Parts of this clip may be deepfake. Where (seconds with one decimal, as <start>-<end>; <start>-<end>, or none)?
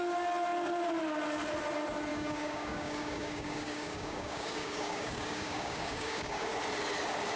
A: 2.1-6.5